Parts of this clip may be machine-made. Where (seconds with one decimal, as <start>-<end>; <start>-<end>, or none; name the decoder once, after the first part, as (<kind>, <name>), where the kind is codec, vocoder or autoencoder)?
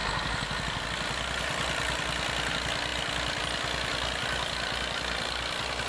none